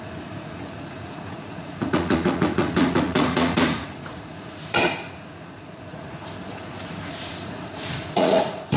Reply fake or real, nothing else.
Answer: fake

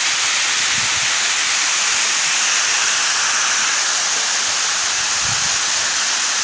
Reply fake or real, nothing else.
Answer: real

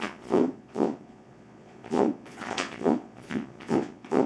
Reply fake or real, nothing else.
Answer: fake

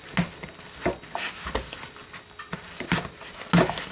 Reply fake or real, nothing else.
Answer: real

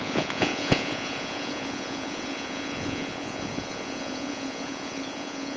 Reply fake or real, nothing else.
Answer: fake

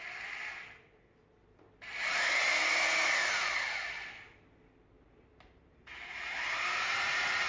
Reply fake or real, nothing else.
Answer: real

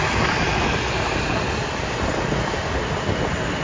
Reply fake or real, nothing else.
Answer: real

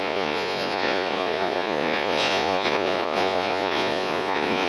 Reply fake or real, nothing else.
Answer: fake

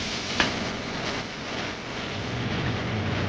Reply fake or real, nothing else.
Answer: fake